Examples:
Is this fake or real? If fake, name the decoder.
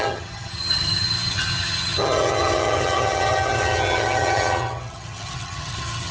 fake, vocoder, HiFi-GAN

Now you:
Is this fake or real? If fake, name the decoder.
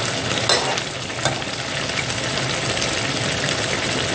real